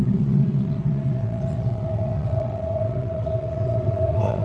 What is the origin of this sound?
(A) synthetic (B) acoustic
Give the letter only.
A